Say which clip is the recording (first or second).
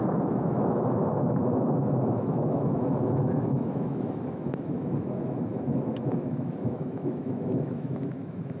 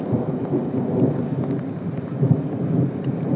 second